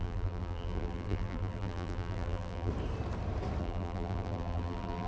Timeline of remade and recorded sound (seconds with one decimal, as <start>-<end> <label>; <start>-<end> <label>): 0.0-2.7 remade; 2.7-3.6 recorded; 3.6-5.1 remade